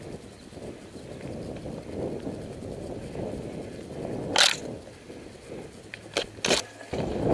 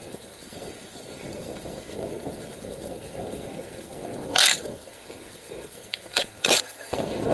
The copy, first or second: second